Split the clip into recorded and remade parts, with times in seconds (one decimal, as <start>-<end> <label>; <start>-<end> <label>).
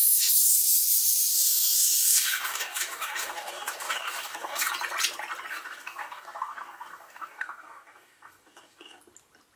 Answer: 0.0-0.5 remade; 0.5-1.3 recorded; 1.3-4.7 remade; 4.7-5.5 recorded; 5.5-9.0 remade; 9.0-9.6 recorded